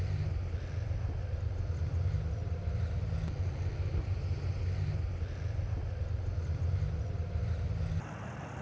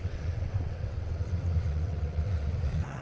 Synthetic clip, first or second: second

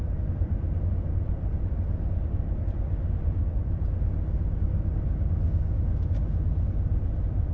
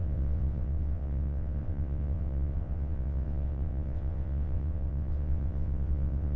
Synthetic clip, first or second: second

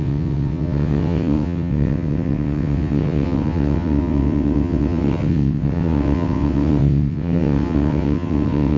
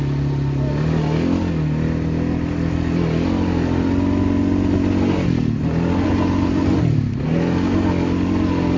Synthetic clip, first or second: first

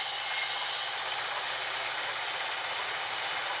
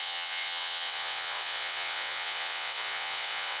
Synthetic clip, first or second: second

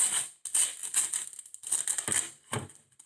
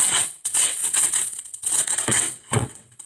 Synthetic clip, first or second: second